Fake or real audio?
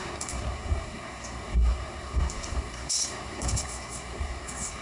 fake